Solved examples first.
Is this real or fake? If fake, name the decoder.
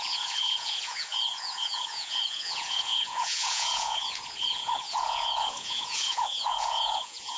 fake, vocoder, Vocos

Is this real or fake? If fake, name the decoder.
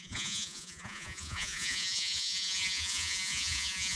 fake, vocoder, Vocos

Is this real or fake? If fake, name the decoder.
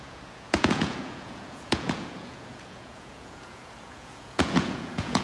fake, vocoder, Vocos